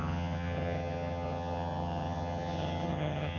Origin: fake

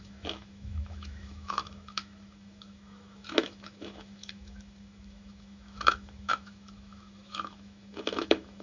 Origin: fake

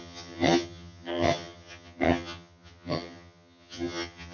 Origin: fake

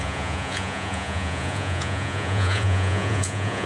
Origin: fake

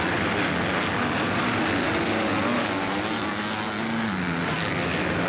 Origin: real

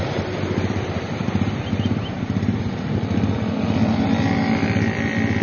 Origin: real